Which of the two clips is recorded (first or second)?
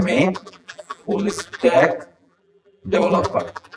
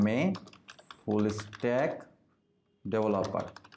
second